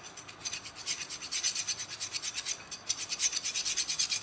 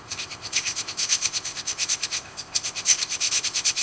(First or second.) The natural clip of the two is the first